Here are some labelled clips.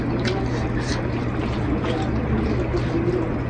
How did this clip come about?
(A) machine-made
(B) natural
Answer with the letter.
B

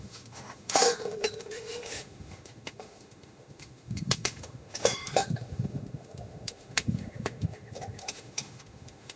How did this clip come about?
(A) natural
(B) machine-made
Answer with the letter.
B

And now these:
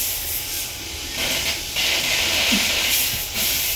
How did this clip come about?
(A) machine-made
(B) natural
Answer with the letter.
B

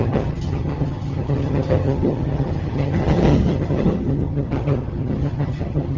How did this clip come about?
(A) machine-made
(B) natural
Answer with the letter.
A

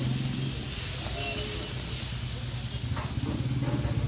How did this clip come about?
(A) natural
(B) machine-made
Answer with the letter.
A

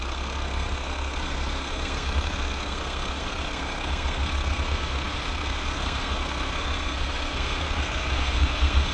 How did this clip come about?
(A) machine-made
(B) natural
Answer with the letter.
A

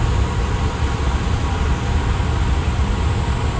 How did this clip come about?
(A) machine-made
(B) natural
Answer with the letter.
B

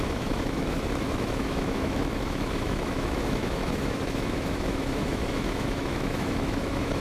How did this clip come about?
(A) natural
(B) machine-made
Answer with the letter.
B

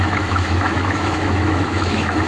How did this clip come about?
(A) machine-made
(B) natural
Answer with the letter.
A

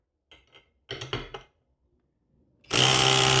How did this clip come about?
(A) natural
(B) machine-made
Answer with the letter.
A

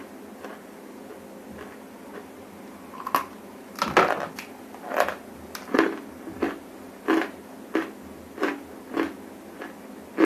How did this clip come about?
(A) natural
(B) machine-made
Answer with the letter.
A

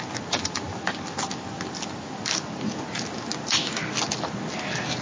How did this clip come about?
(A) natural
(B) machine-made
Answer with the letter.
A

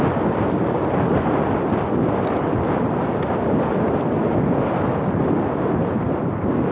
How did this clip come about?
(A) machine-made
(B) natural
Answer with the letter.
B